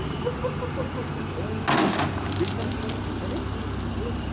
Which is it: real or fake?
real